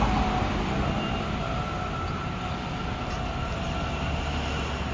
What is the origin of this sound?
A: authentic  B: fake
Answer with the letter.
A